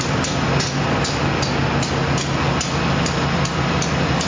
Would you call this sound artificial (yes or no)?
no